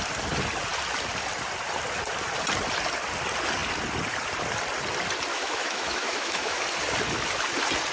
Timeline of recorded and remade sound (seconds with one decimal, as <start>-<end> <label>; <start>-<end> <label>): 0.0-5.3 recorded; 5.3-6.6 remade; 6.6-7.9 recorded